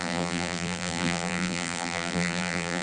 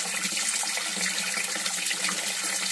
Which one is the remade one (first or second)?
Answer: first